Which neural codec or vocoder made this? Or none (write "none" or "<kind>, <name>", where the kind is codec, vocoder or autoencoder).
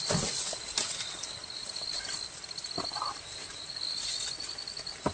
none